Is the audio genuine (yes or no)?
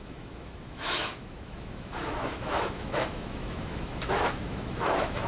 no